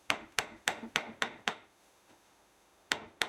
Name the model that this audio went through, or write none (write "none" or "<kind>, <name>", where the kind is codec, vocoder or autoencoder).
autoencoder, DAC-VAE